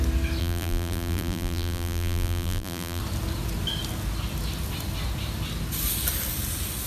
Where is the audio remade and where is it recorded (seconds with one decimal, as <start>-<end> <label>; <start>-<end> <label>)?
0.0-0.4 recorded; 0.4-3.0 remade; 3.0-6.9 recorded